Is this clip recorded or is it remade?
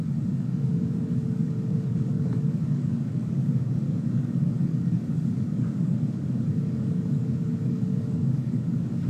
remade